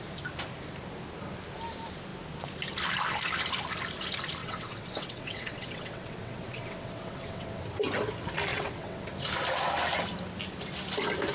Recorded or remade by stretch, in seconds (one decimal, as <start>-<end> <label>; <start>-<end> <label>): 0.0-4.4 recorded; 4.4-7.6 remade; 7.6-8.5 recorded; 8.5-9.1 remade; 9.1-11.3 recorded